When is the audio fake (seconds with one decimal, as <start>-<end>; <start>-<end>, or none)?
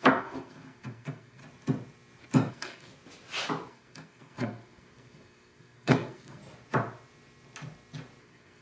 0.0-1.4; 2.5-2.9; 3.7-6.4; 8.2-8.6